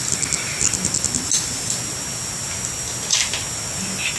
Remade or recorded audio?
recorded